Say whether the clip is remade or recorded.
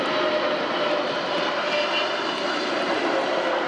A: recorded